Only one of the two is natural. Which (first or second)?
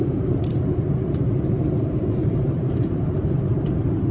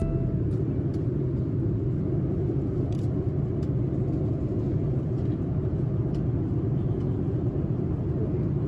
second